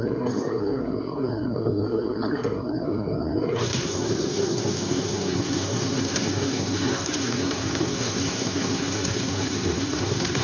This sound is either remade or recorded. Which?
remade